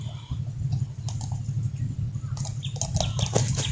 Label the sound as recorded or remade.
recorded